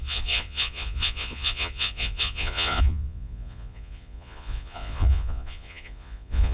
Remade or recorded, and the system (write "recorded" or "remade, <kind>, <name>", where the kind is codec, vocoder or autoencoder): remade, vocoder, Vocos